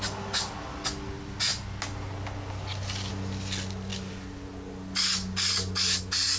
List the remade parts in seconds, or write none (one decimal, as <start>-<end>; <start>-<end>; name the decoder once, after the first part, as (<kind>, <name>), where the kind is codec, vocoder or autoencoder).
none